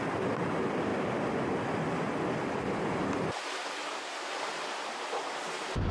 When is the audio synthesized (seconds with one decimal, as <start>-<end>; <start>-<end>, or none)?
none

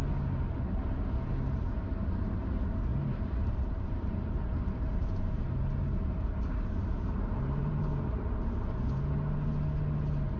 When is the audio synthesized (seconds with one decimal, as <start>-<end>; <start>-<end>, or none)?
2.9-7.8

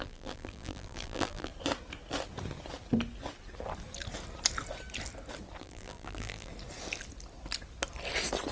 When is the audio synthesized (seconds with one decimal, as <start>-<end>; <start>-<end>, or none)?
0.0-1.5; 5.6-6.5

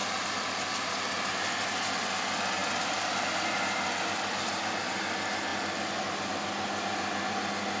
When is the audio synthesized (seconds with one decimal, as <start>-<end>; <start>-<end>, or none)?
0.0-0.9; 2.6-4.5

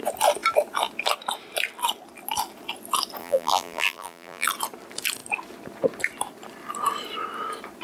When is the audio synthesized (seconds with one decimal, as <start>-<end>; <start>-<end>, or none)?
3.2-4.5

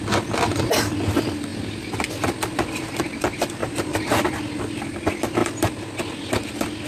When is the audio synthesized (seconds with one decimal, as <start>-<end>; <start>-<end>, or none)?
3.6-4.3